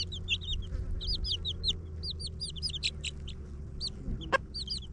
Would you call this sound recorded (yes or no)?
yes